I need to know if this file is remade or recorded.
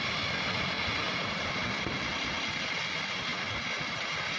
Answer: recorded